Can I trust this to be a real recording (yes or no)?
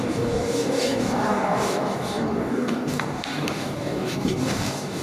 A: no